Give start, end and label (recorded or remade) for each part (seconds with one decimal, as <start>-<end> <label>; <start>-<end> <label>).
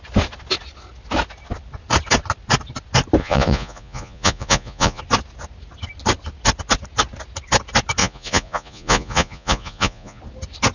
0.0-3.2 recorded; 3.2-5.0 remade; 5.0-8.0 recorded; 8.0-10.2 remade; 10.2-10.7 recorded